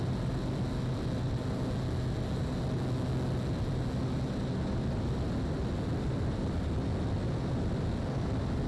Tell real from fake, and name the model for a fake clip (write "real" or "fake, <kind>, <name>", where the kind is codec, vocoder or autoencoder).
real